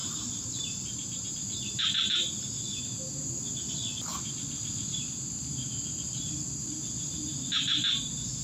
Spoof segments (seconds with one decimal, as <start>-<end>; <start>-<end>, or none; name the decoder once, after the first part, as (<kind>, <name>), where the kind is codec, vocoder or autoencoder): 0.0-1.3 (vocoder, BigVGAN v2); 4.1-6.3